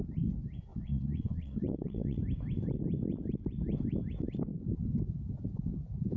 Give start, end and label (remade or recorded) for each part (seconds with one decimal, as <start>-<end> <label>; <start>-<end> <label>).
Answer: 0.0-0.7 recorded; 0.7-2.2 remade; 2.2-6.2 recorded